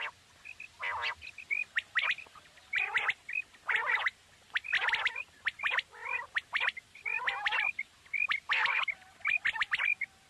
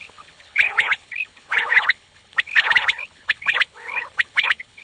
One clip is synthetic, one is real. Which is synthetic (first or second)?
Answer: second